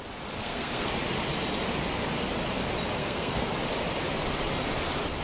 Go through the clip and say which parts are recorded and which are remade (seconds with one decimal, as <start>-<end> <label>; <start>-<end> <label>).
0.0-0.4 recorded; 0.4-0.9 remade; 0.9-3.0 recorded; 3.0-3.5 remade; 3.5-5.2 recorded